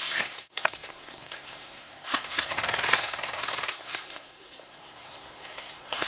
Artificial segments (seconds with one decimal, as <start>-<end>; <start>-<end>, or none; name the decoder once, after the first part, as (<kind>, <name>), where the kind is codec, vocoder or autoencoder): 0.0-6.1 (codec, SNAC)